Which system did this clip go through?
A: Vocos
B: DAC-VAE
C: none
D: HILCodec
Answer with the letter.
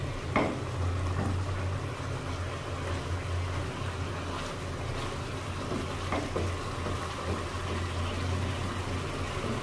C